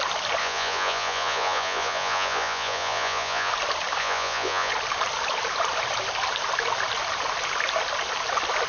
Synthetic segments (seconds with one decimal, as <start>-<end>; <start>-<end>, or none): 0.4-3.5; 4.0-4.7

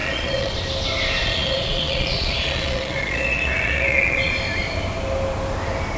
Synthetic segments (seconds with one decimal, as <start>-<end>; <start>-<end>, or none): 0.0-0.6; 1.2-4.3

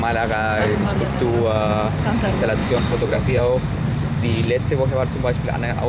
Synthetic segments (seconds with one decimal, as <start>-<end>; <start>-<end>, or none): 0.6-1.2; 2.6-3.4

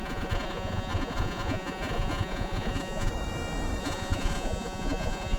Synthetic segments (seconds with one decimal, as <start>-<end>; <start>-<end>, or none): 0.0-3.1; 3.8-5.4

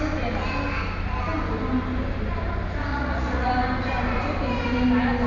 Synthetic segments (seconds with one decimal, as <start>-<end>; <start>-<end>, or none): 2.9-3.5

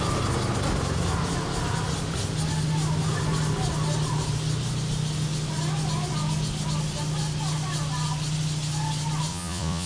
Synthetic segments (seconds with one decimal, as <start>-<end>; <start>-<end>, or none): 9.3-9.9